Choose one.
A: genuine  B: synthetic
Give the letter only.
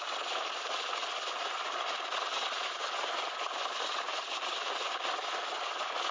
A